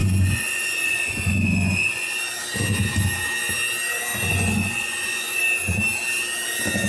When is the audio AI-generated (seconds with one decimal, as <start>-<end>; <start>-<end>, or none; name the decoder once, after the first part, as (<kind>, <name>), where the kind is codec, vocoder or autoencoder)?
0.0-2.2 (vocoder, Vocos); 4.3-5.4